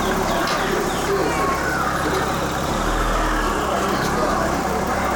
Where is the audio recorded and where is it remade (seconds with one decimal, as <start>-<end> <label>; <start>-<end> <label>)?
0.0-1.2 remade; 1.2-4.3 recorded; 4.3-5.2 remade